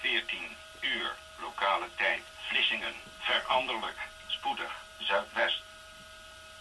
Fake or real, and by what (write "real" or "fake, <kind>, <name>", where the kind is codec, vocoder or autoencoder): real